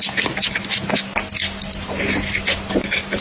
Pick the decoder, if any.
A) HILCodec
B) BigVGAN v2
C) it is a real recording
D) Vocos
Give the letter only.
C